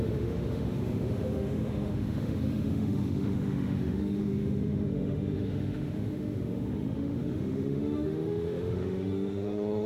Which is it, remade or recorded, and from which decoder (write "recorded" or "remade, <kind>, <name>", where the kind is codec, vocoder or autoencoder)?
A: remade, autoencoder, DAC-VAE